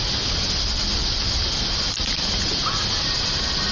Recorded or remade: recorded